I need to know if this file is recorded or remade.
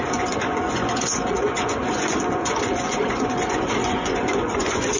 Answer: remade